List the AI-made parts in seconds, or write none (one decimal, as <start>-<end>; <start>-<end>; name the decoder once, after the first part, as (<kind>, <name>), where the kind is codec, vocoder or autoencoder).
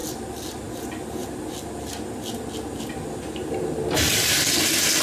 none